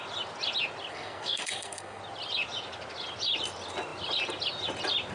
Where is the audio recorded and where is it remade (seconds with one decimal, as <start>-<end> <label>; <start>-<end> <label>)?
0.0-0.9 recorded; 0.9-2.0 remade; 2.0-5.1 recorded